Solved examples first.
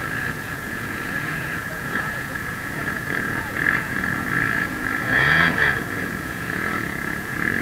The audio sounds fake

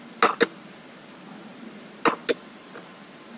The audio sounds real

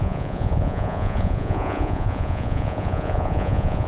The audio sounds fake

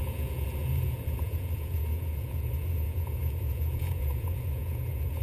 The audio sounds fake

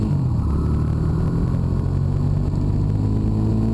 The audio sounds real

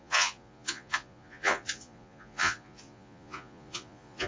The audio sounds fake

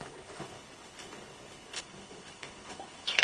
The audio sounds fake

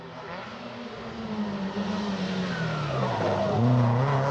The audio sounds real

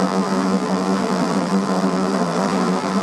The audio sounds fake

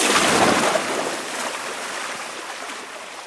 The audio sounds real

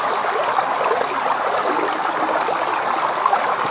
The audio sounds real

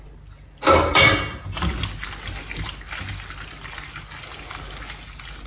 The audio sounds real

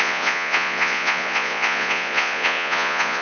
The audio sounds fake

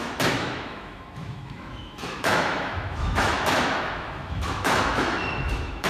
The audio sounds fake